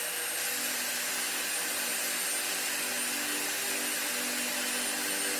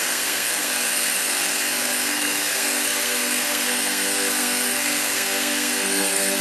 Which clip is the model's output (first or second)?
second